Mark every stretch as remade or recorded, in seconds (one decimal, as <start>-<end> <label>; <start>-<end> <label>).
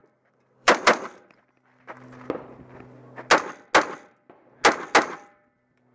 0.0-1.9 remade; 1.9-5.9 recorded